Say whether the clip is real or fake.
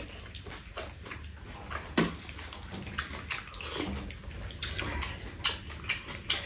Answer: real